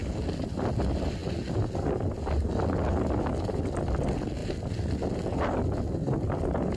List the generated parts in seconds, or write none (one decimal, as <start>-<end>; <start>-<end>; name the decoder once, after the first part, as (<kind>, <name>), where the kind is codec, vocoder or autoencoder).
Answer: 0.0-0.7 (vocoder, BigVGAN v2)